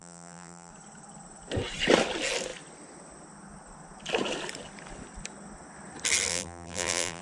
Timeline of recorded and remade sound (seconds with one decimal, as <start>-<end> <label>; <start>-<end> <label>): 0.0-0.7 remade; 0.7-6.3 recorded; 6.3-7.2 remade